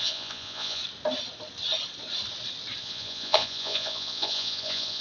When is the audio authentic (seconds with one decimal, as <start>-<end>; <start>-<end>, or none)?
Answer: 0.8-2.8